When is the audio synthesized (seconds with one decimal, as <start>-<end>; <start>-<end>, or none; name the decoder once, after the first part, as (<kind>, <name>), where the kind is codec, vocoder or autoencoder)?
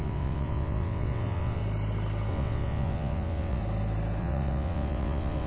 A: 0.0-1.6 (vocoder, WaveNeXt); 2.3-3.6; 4.2-5.5